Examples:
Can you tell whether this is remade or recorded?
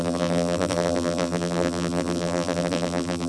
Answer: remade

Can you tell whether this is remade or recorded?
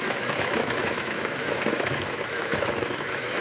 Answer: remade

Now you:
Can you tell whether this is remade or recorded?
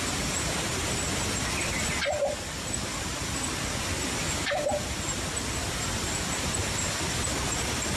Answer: recorded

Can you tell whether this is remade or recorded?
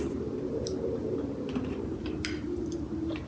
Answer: remade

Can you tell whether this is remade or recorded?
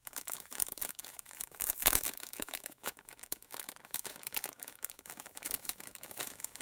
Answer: remade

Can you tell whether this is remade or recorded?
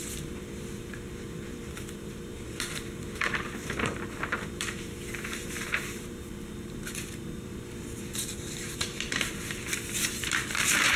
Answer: remade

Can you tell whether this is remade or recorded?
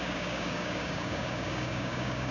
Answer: remade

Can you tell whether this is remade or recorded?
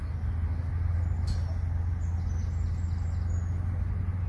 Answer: recorded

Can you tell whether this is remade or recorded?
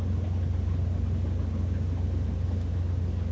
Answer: recorded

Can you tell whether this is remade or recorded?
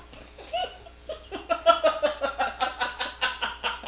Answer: recorded